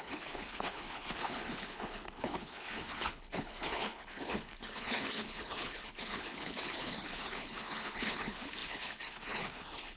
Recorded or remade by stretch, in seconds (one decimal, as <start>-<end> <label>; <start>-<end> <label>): 0.0-10.0 remade